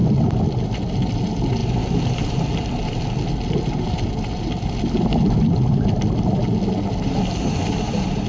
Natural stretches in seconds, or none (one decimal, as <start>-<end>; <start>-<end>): 0.0-8.3